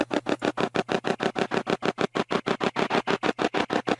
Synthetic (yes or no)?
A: no